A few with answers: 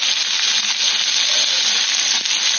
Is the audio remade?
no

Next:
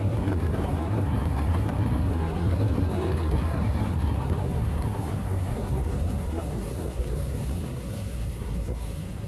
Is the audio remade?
yes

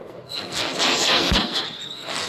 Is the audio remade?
yes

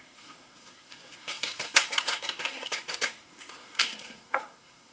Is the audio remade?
yes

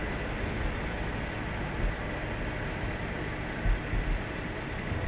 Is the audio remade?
no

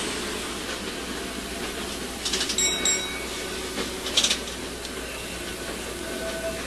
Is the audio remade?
no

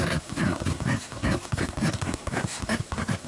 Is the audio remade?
yes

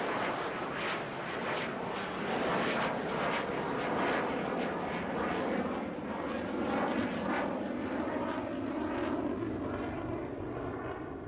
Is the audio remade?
no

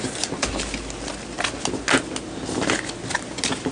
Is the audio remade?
no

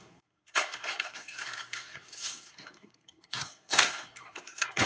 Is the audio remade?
yes